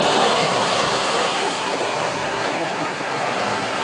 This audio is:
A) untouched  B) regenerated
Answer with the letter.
B